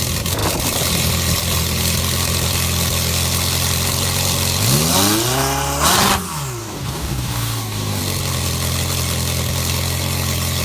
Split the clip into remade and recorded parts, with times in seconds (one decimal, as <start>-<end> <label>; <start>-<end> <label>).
0.0-6.6 recorded; 6.6-8.0 remade; 8.0-10.6 recorded